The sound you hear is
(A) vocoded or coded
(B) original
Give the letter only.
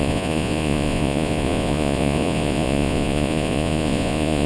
A